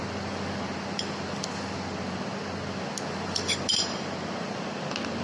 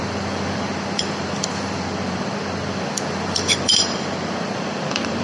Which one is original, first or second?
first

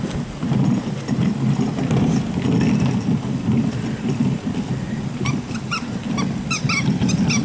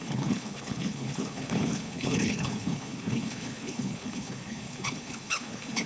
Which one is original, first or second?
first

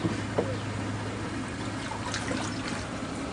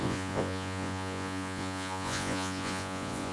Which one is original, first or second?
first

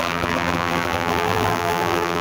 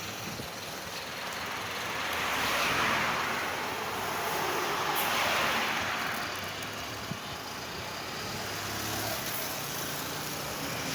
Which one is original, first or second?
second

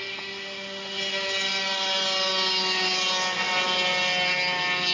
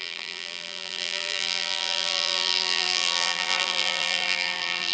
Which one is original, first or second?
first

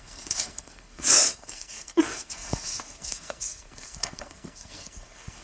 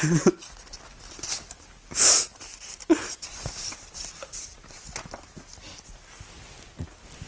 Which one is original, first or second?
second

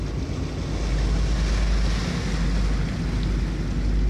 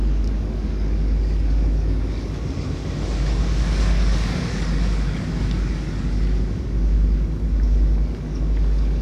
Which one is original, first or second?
first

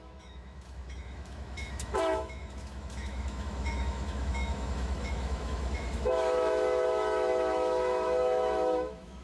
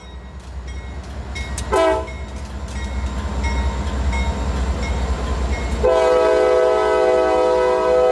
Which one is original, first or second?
second